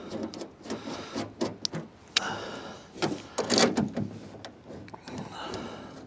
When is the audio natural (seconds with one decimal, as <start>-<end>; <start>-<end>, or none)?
0.0-6.1